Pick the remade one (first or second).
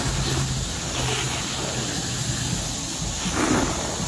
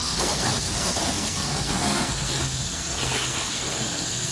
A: second